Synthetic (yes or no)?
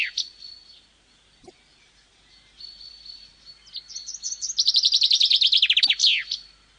no